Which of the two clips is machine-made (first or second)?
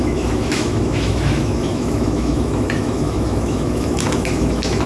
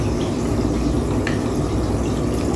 first